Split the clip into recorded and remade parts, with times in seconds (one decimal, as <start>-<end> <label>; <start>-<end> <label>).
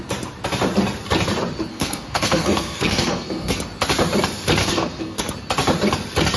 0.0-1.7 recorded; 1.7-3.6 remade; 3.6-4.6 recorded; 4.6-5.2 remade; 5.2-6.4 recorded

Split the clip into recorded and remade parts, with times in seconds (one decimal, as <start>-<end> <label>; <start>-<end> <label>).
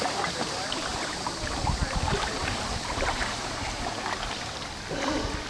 0.0-0.9 recorded; 0.9-1.5 remade; 1.5-2.4 recorded; 2.4-4.6 remade; 4.6-5.5 recorded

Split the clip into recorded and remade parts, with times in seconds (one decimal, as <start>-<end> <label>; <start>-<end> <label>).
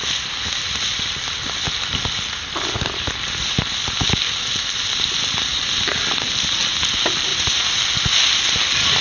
0.0-7.3 recorded; 7.3-7.8 remade; 7.8-9.0 recorded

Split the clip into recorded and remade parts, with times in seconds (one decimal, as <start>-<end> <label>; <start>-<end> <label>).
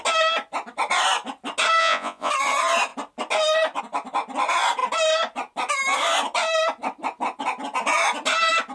0.0-1.8 recorded; 1.8-2.3 remade; 2.3-8.7 recorded